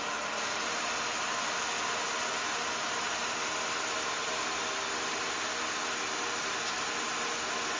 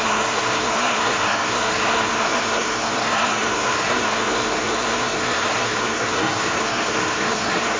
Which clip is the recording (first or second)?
first